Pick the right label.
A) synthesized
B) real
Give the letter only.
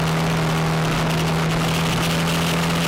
B